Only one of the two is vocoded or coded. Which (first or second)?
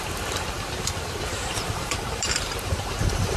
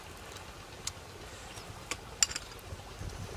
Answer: first